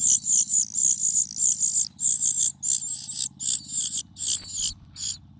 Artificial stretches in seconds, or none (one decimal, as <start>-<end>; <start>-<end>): none